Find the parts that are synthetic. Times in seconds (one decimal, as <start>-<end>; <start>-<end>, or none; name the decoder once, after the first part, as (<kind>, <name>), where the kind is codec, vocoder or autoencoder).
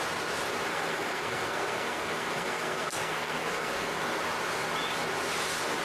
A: 0.7-4.2 (codec, SNAC)